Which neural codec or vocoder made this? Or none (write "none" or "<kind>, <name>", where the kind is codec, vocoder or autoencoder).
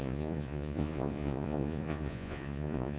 vocoder, Vocos